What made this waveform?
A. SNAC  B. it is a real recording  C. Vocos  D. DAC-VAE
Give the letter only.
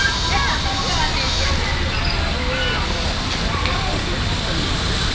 B